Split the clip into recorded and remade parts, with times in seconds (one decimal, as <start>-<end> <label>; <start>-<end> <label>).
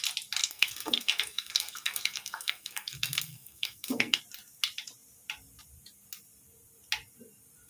0.0-0.4 recorded; 0.4-4.2 remade; 4.2-7.7 recorded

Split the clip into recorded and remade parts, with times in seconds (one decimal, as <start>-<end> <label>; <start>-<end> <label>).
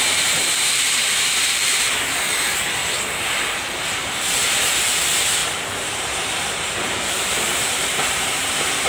0.0-8.9 remade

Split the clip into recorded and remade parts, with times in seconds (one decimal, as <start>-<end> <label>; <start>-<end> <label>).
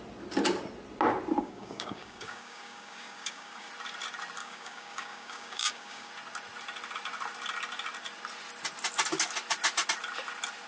0.0-1.4 recorded; 1.4-3.7 remade; 3.7-4.4 recorded; 4.4-6.1 remade; 6.1-10.7 recorded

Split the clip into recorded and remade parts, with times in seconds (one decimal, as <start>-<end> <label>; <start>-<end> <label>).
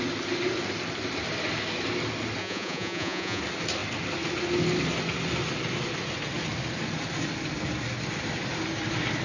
0.0-2.4 recorded; 2.4-3.4 remade; 3.4-9.2 recorded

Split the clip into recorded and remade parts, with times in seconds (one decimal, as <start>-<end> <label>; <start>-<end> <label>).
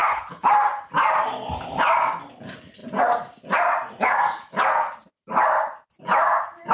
0.0-0.5 remade; 0.5-6.7 recorded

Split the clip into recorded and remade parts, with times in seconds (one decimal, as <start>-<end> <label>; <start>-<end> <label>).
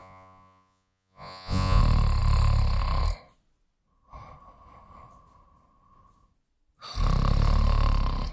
0.0-1.8 remade; 1.8-8.3 recorded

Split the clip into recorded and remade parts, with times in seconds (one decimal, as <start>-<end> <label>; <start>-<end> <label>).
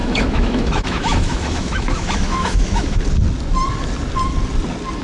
0.0-3.0 remade; 3.0-5.0 recorded